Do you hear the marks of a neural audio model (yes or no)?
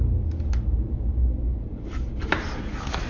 no